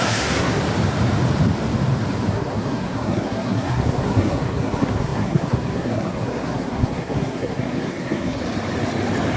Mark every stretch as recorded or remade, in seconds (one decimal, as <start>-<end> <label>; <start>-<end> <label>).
0.0-0.6 remade; 0.6-2.3 recorded; 2.3-8.4 remade; 8.4-9.4 recorded